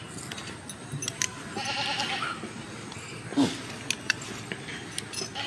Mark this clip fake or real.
real